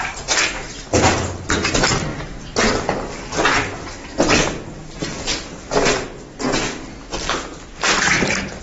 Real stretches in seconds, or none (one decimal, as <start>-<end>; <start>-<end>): 0.0-8.6

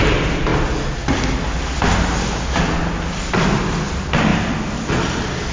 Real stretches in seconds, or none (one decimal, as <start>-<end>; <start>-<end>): 0.0-4.3; 4.9-5.5